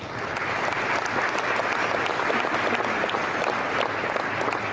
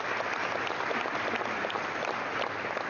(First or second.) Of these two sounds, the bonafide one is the first